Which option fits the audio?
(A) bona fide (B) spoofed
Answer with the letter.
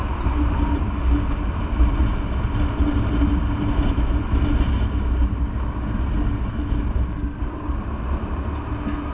A